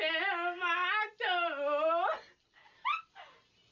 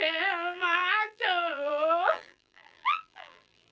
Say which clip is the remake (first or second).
second